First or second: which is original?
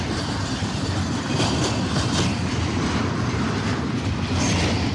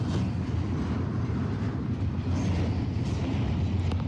second